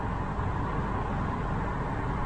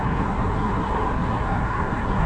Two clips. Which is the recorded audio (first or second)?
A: first